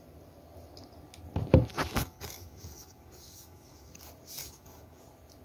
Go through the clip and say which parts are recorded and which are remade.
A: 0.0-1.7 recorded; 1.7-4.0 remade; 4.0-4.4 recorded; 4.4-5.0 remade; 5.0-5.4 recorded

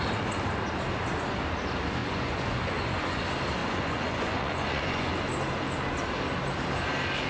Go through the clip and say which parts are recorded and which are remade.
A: 0.0-2.0 recorded; 2.0-3.2 remade; 3.2-3.6 recorded; 3.6-5.1 remade; 5.1-7.3 recorded